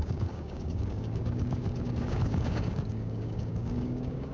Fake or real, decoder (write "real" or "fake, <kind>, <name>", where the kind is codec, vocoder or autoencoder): fake, codec, DAC